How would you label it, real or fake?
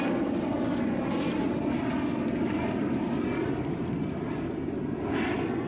real